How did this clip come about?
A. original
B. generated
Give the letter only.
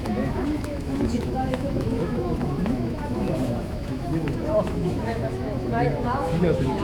B